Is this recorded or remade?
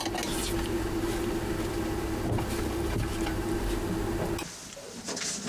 recorded